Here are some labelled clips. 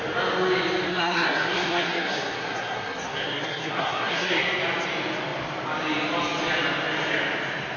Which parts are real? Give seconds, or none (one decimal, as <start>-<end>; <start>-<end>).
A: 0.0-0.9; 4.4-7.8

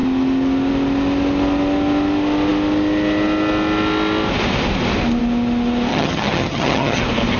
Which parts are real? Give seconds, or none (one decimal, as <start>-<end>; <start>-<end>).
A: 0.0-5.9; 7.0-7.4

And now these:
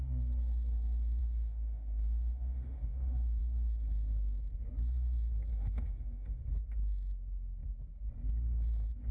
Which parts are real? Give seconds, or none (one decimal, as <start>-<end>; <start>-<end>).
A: 0.0-1.2; 3.4-5.5; 6.4-9.1

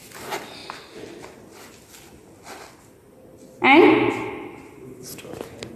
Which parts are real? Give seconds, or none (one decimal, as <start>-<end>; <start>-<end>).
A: 0.0-5.8